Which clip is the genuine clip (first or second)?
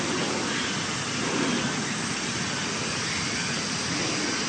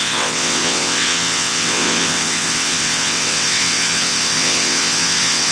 first